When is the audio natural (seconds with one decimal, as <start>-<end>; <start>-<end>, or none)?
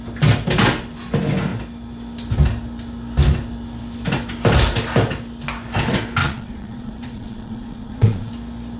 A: 0.0-6.2; 8.3-8.8